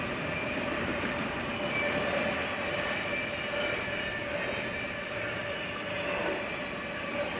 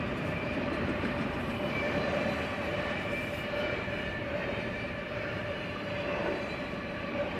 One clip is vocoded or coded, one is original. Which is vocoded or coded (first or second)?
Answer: second